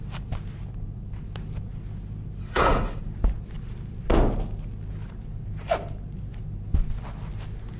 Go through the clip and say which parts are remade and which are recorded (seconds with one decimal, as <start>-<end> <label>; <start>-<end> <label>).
0.0-2.4 recorded; 2.4-3.0 remade; 3.0-7.8 recorded